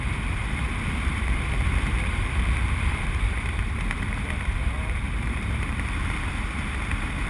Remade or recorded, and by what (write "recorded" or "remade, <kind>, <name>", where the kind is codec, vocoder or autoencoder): remade, vocoder, BigVGAN v2